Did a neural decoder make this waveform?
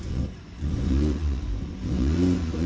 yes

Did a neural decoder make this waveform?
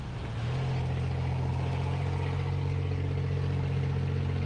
no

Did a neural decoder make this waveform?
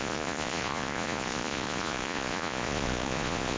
yes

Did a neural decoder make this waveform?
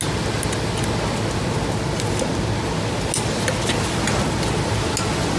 no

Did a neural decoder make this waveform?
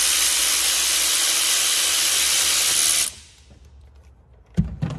no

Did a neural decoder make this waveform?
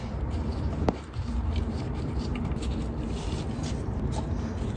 no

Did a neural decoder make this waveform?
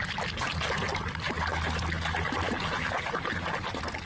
no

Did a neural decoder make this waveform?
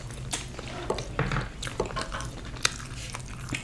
no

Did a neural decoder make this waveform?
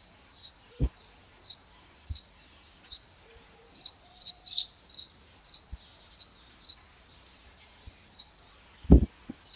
no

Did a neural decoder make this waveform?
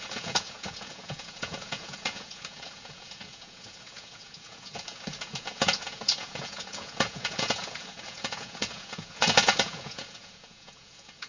yes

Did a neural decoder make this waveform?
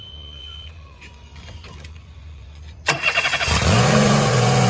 yes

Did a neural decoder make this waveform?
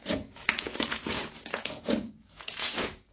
yes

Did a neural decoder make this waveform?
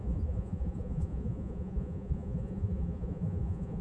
yes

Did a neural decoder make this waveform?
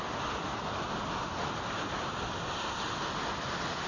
no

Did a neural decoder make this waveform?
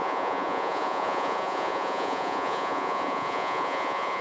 yes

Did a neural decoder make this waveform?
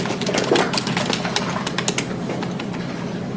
no